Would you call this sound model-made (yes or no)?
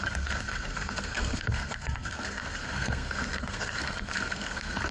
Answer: yes